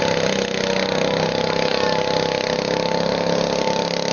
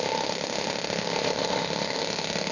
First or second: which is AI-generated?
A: second